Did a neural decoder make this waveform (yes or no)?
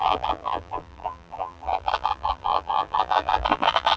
yes